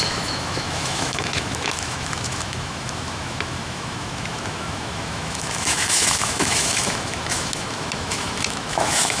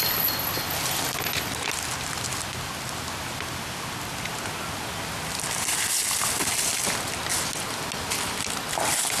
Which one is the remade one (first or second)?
first